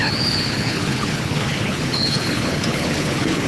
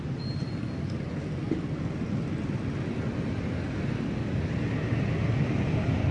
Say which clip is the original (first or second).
second